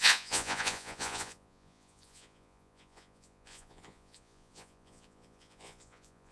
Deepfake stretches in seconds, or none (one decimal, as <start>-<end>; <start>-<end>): 0.0-6.3